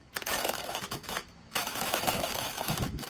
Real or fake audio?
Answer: fake